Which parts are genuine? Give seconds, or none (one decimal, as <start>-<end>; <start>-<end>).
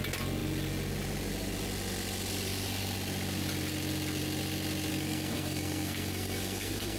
0.0-4.9